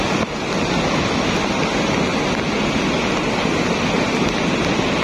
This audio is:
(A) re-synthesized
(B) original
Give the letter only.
B